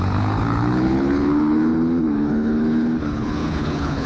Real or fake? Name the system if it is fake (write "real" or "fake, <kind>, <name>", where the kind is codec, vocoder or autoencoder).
fake, codec, HILCodec